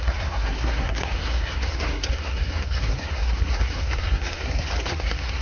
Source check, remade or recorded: remade